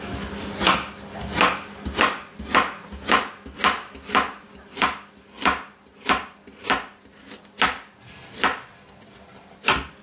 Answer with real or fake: real